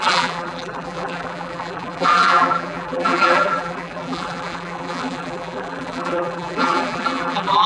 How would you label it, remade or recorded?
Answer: remade